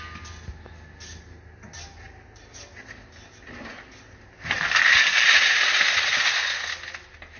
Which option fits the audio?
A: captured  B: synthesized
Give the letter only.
A